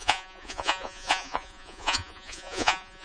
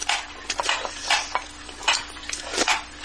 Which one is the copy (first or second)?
first